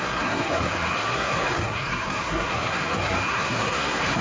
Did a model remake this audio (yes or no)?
yes